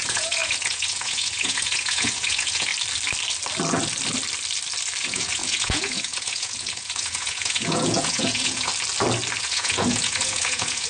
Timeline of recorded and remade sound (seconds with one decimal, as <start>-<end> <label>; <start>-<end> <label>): 0.0-2.7 remade; 2.7-5.0 recorded; 5.0-8.7 remade; 8.7-9.4 recorded; 9.4-10.9 remade